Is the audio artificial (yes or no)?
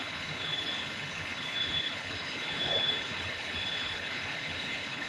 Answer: yes